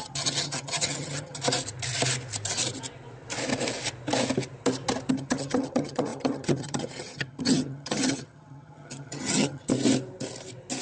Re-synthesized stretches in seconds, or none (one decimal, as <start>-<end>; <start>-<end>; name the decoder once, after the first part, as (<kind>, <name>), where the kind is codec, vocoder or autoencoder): 0.0-1.4 (vocoder, HiFi-GAN); 5.1-9.7